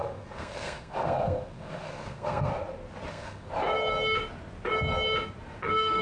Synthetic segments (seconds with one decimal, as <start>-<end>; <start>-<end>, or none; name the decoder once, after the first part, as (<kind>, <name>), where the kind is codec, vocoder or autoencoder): 0.0-2.5 (codec, SNAC); 3.1-3.5; 5.6-6.0